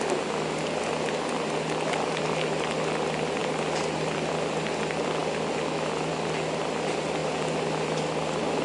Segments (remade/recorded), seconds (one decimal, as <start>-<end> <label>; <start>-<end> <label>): 0.0-8.6 recorded